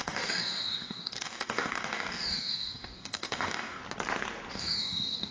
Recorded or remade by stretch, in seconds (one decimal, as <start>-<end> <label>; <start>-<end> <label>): 0.0-3.8 remade; 3.8-4.5 recorded; 4.5-5.3 remade